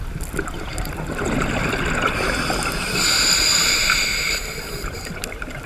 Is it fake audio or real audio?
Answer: real